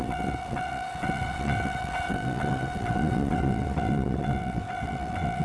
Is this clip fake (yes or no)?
yes